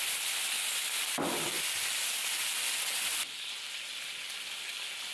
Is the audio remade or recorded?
recorded